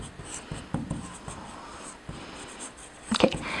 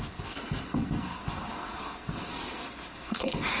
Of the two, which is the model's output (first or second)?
second